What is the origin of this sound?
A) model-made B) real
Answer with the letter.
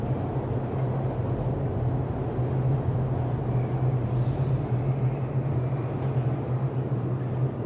B